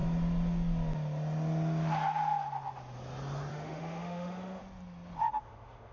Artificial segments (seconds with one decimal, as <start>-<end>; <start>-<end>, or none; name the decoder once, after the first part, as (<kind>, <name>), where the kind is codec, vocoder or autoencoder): 3.5-4.6 (autoencoder, DAC-VAE); 5.3-5.9